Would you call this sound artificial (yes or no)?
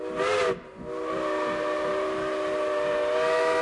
no